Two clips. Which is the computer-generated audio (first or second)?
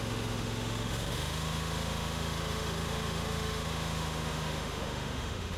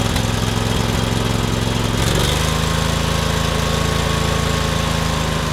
first